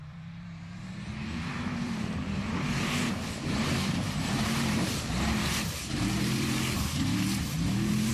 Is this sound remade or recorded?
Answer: remade